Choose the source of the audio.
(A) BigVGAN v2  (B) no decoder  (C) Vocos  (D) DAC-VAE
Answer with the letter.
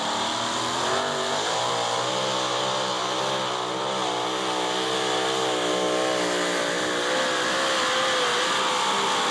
B